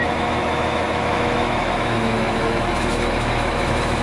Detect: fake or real fake